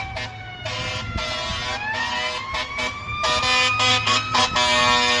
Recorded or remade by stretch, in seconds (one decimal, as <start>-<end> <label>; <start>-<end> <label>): 0.0-3.9 recorded; 3.9-4.4 remade; 4.4-5.2 recorded